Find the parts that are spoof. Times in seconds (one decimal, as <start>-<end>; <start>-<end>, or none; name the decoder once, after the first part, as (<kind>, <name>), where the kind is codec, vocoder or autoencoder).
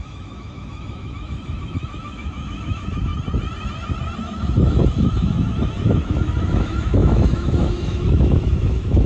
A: 0.0-3.1 (autoencoder, DAC-VAE); 4.2-9.1